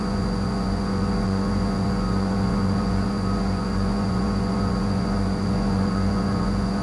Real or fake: fake